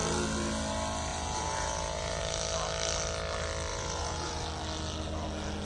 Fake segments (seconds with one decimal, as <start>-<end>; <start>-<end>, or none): 1.1-2.2; 3.7-4.4